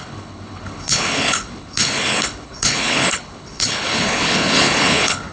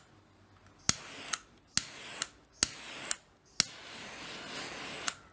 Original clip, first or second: second